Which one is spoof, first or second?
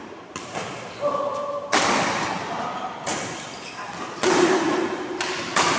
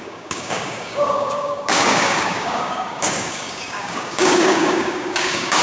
second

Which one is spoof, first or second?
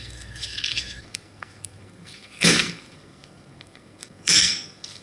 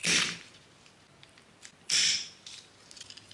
first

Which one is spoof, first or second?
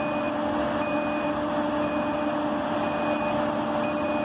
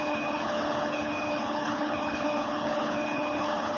second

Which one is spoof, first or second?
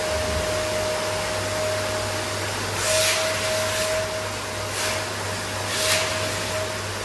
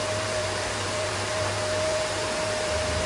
second